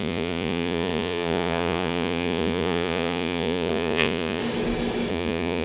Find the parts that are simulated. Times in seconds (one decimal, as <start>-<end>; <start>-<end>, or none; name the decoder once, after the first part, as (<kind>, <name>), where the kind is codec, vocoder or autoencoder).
0.0-4.4 (vocoder, Vocos); 5.1-5.6